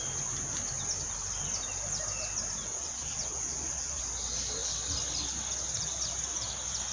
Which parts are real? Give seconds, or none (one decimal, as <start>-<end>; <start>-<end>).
0.0-2.7; 4.0-6.9